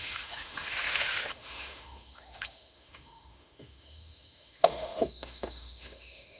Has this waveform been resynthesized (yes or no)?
yes